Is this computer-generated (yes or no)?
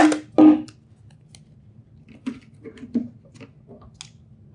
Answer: no